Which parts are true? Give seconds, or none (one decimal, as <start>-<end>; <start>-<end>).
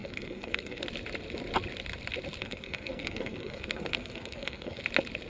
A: 0.8-2.4; 4.8-5.3